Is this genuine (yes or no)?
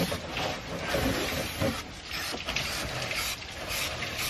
yes